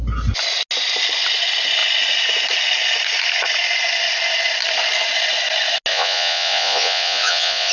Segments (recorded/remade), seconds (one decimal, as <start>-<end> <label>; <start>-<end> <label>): 0.0-5.9 recorded; 5.9-7.7 remade

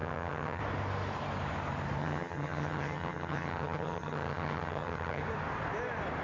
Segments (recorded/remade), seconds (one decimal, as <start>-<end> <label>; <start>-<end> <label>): 0.0-0.6 remade; 0.6-2.0 recorded; 2.0-5.2 remade; 5.2-6.2 recorded

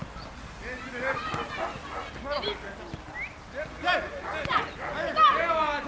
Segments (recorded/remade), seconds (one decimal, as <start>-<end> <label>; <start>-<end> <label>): 0.0-5.9 recorded

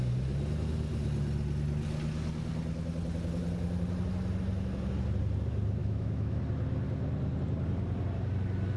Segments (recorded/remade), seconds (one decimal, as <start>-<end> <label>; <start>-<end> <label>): 0.0-5.8 recorded; 5.8-6.4 remade; 6.4-8.8 recorded

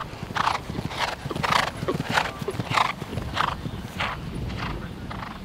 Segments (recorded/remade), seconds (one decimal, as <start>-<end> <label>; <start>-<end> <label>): 0.0-5.4 recorded

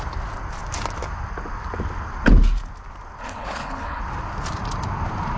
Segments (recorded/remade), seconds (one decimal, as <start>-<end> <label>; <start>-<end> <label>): 0.0-3.2 recorded; 3.2-4.0 remade; 4.0-5.4 recorded

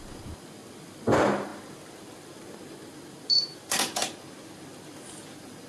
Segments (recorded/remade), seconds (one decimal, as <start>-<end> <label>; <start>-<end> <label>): 0.0-5.7 recorded